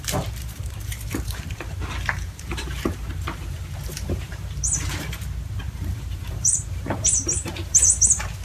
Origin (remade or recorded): remade